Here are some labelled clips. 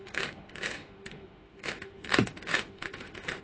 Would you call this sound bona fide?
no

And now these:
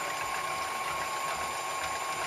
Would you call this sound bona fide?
yes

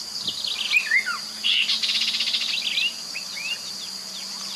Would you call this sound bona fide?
yes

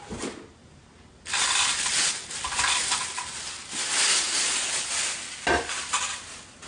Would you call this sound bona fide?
yes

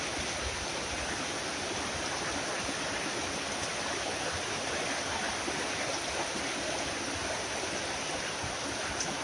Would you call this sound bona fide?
yes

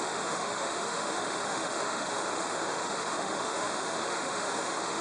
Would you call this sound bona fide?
no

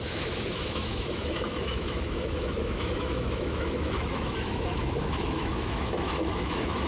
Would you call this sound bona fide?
no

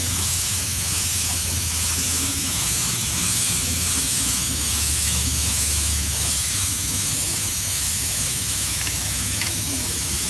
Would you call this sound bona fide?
no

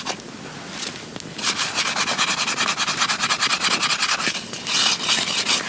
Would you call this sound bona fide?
yes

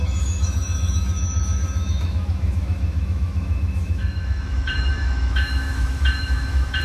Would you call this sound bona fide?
no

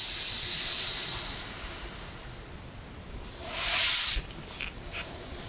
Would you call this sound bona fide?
yes